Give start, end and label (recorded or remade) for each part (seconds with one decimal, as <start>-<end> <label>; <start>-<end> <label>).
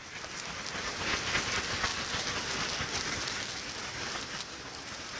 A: 0.0-5.2 recorded